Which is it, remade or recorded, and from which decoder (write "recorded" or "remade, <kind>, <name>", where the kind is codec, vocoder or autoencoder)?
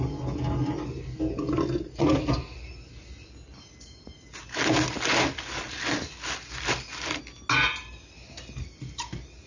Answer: recorded